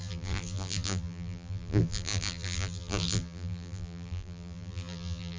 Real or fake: fake